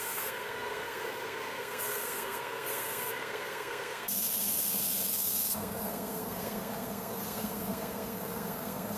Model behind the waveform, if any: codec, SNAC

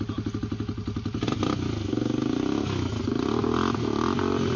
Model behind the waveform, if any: none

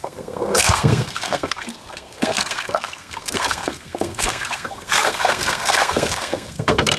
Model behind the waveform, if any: codec, SNAC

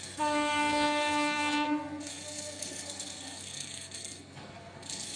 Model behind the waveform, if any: codec, SNAC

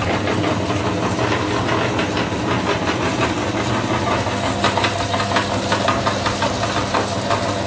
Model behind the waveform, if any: none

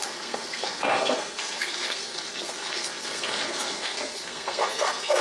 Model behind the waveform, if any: codec, SNAC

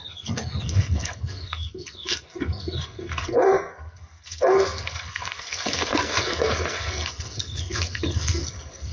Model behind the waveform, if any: codec, SNAC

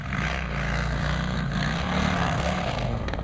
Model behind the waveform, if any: codec, SNAC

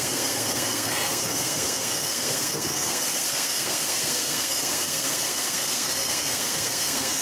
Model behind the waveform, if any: codec, SNAC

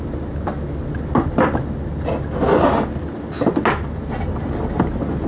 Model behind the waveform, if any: none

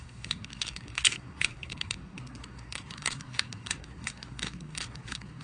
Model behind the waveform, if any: codec, SNAC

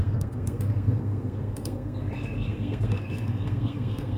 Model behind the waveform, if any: codec, SNAC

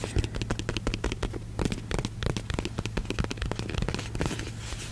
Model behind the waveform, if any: none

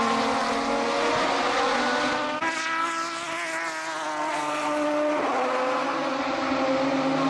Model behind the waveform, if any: none